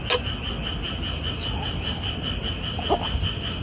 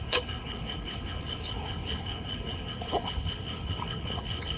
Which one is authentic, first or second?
first